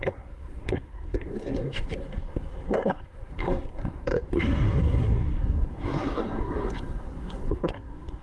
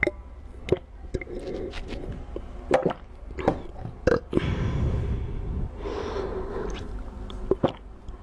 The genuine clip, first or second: second